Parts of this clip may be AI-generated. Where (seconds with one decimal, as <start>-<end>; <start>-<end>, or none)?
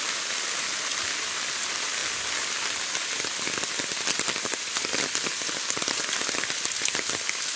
none